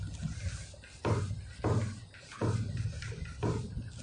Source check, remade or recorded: recorded